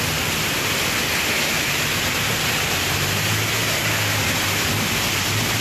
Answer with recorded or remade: recorded